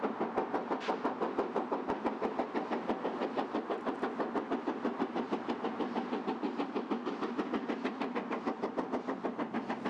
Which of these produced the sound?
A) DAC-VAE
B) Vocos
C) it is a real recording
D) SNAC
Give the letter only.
C